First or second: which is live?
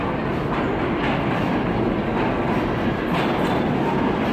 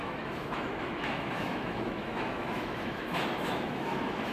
first